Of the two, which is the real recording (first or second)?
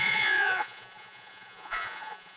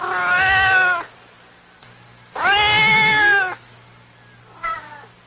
second